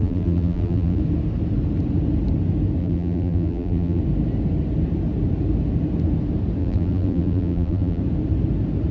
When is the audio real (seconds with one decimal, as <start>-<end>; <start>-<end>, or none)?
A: 1.0-2.8; 4.0-6.6; 8.0-8.9